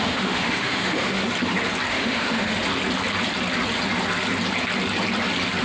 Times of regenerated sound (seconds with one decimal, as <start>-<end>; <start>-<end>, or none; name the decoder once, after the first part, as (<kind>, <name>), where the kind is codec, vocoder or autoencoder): 0.0-1.2 (autoencoder, DAC-VAE); 1.9-2.6